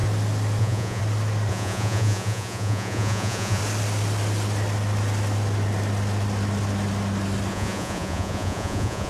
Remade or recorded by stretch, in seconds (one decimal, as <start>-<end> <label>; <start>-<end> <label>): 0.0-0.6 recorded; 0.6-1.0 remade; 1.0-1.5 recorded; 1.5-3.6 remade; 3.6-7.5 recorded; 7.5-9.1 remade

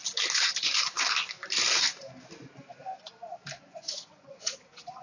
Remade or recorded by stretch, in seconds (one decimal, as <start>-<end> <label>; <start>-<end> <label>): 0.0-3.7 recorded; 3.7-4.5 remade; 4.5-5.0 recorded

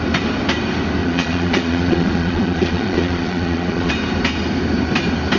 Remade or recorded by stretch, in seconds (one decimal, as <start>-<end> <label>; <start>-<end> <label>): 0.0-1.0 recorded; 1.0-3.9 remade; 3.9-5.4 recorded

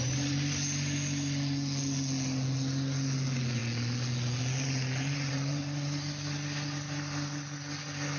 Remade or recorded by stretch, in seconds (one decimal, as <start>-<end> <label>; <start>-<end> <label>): 0.0-8.2 recorded

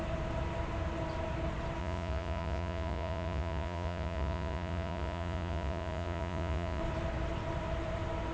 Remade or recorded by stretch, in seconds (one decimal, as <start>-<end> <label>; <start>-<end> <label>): 0.0-1.8 recorded; 1.8-6.8 remade; 6.8-8.3 recorded

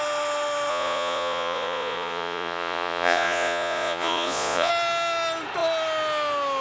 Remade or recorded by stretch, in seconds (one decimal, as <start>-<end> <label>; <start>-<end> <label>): 0.0-0.7 recorded; 0.7-4.7 remade; 4.7-6.6 recorded